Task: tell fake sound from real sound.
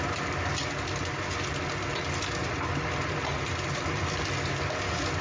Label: real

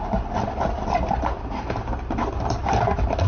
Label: real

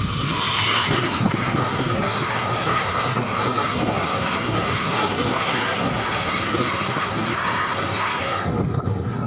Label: fake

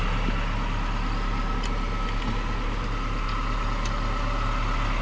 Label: real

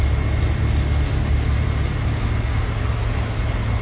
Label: real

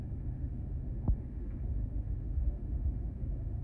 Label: fake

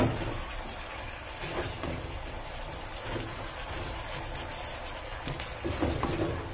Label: real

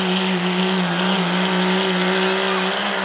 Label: real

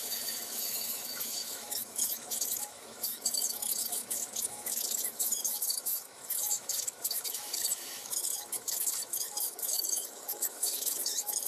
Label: fake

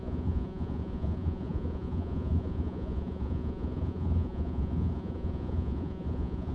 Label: fake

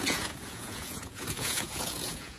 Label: fake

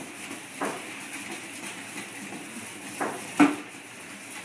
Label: real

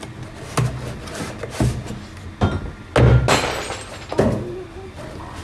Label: real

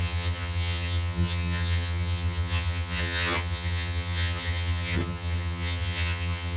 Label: fake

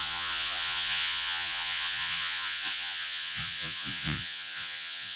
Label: fake